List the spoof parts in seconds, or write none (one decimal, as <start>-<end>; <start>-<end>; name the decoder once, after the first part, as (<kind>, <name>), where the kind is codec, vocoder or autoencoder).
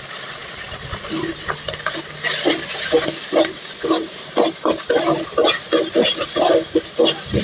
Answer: 5.4-7.4 (vocoder, BigVGAN v2)